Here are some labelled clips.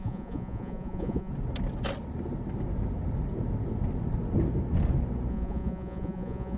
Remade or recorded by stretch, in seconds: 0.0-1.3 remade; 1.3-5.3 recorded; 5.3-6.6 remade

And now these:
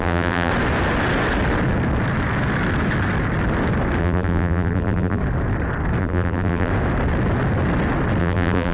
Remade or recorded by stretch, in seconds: 0.0-0.5 remade; 0.5-4.0 recorded; 4.0-5.2 remade; 5.2-6.0 recorded; 6.0-6.7 remade; 6.7-8.2 recorded; 8.2-8.7 remade

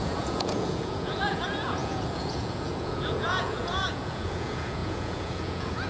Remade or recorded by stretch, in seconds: 0.0-5.9 remade

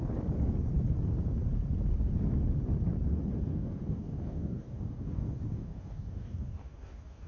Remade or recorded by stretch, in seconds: 0.0-3.5 recorded; 3.5-7.3 remade

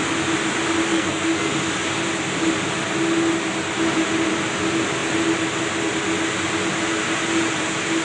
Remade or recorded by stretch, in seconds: 0.0-0.9 recorded; 0.9-1.5 remade; 1.5-8.0 recorded

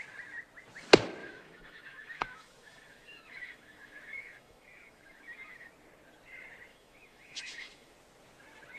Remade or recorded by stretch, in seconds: 0.0-1.2 recorded; 1.2-5.7 remade; 5.7-6.7 recorded; 6.7-7.9 remade; 7.9-8.8 recorded

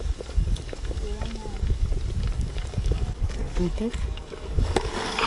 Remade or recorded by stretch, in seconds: 0.0-1.9 remade; 1.9-2.5 recorded; 2.5-5.3 remade

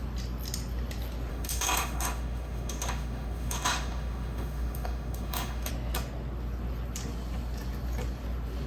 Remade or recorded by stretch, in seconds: 0.0-1.3 recorded; 1.3-5.7 remade; 5.7-8.7 recorded